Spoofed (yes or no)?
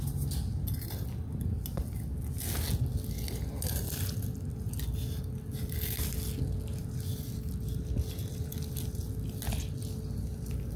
no